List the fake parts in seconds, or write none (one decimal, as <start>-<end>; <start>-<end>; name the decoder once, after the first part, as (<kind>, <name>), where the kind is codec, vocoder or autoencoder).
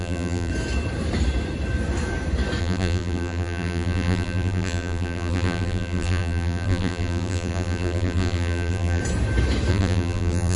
0.0-0.5 (vocoder, BigVGAN v2); 2.6-9.0; 9.7-10.6